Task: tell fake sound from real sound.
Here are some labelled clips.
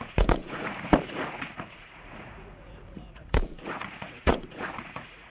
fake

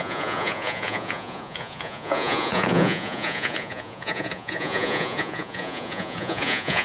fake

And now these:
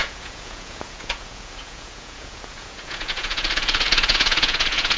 fake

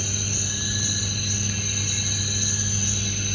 real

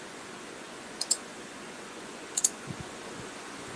fake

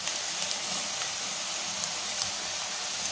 real